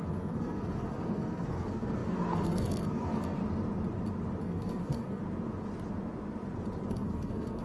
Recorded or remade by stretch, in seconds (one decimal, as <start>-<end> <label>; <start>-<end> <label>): 0.0-3.4 remade; 3.4-4.4 recorded; 4.4-5.2 remade; 5.2-6.9 recorded; 6.9-7.6 remade